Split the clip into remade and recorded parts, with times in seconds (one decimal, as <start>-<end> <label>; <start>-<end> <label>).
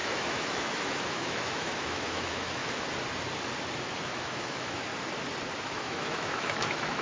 0.0-2.6 remade; 2.6-4.1 recorded; 4.1-4.9 remade; 4.9-5.6 recorded; 5.6-7.0 remade